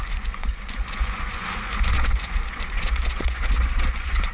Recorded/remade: remade